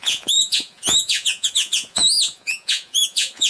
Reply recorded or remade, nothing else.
remade